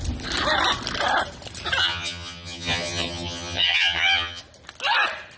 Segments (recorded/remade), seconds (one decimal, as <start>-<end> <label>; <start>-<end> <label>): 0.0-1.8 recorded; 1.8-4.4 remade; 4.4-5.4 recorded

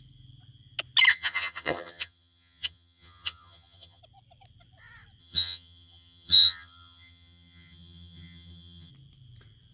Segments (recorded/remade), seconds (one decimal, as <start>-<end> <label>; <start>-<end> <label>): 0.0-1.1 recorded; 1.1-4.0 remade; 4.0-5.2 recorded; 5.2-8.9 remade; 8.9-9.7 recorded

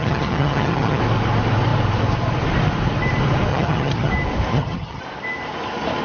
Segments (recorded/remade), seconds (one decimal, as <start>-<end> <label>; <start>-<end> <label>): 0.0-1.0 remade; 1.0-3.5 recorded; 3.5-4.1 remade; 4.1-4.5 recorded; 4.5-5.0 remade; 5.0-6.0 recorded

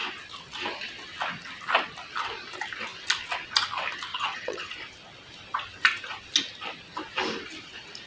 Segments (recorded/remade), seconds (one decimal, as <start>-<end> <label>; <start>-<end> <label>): 0.0-4.1 recorded; 4.1-4.7 remade; 4.7-8.1 recorded

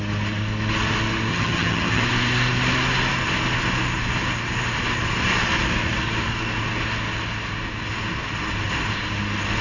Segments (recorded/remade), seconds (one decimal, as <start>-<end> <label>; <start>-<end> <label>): 0.0-1.3 recorded; 1.3-2.0 remade; 2.0-9.6 recorded

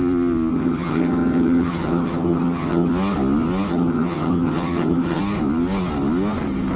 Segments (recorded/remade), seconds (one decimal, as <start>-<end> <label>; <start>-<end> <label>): 0.0-0.5 recorded; 0.5-2.9 remade; 2.9-3.7 recorded; 3.7-5.2 remade; 5.2-6.8 recorded

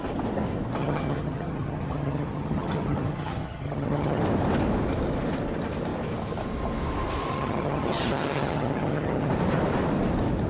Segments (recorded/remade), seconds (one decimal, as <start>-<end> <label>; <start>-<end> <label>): 0.0-0.8 recorded; 0.8-4.2 remade; 4.2-7.3 recorded; 7.3-9.3 remade; 9.3-10.5 recorded